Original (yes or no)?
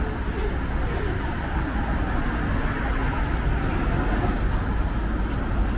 yes